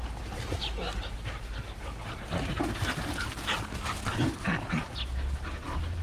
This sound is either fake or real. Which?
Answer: real